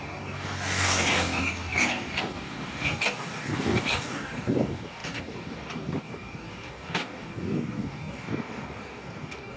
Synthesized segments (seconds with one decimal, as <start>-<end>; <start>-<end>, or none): 0.0-9.6